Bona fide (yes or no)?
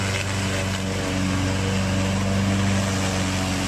yes